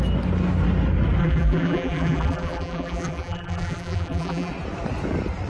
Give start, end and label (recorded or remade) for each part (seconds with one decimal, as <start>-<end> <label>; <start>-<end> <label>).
0.0-1.2 recorded; 1.2-4.5 remade; 4.5-5.5 recorded